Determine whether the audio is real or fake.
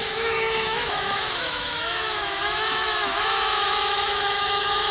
fake